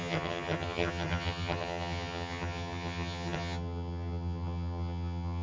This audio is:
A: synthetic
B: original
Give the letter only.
A